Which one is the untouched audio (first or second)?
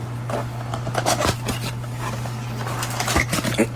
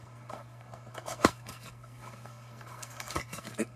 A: first